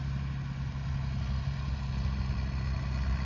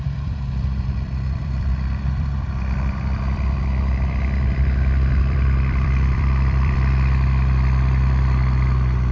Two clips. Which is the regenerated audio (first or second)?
second